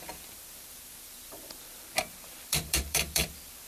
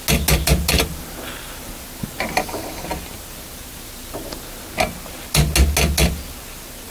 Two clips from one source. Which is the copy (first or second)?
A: first